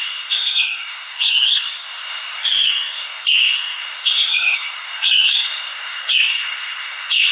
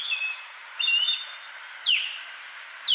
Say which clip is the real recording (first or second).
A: second